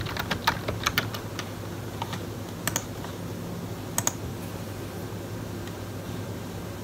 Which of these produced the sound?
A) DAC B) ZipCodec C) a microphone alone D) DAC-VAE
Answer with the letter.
C